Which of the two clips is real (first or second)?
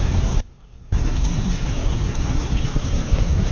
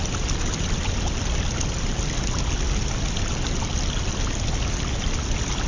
second